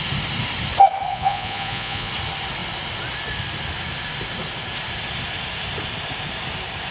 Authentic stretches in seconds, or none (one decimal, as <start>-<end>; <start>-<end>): 0.0-1.1; 2.1-6.9